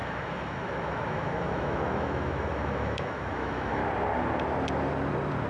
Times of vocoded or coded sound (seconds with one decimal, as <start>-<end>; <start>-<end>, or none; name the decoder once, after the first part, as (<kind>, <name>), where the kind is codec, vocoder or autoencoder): 0.0-3.8 (autoencoder, DAC-VAE)